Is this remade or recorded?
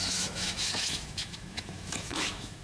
remade